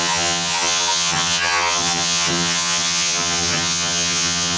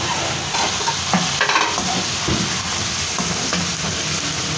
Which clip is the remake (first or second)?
first